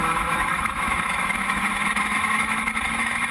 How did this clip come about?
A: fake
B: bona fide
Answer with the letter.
A